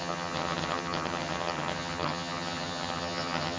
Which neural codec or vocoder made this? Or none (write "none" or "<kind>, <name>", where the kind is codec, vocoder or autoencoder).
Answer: vocoder, HiFi-GAN